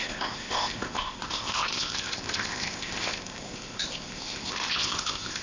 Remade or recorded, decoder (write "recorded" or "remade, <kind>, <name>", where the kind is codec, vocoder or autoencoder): remade, codec, ZipCodec